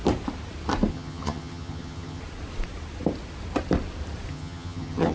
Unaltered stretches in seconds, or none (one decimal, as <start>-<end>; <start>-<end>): 0.0-0.9; 2.2-4.3